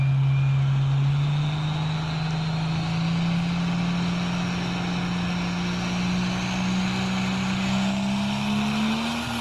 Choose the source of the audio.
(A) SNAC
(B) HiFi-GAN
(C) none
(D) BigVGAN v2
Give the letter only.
C